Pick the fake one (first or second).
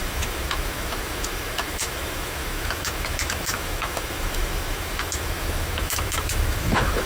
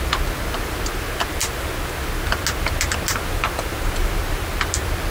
first